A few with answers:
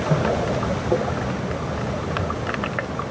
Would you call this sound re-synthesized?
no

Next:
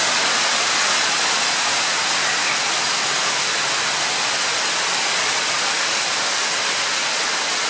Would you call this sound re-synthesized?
no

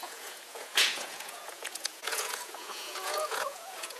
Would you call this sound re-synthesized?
yes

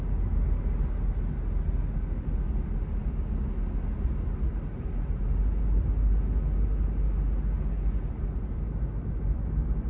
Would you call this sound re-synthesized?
no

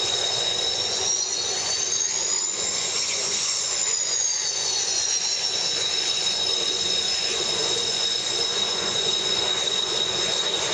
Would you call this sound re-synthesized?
yes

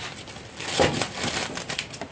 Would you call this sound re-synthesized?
no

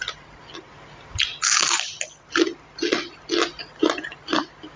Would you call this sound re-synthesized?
no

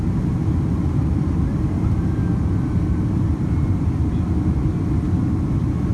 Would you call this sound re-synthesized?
no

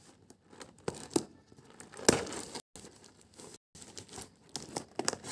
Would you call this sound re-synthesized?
no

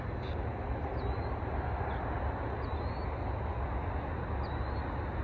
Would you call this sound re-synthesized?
no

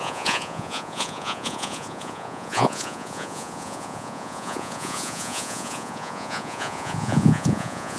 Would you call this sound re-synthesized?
yes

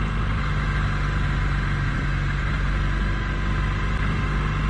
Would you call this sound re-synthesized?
no